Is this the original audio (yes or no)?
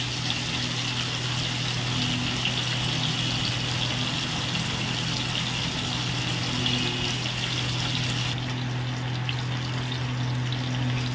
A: yes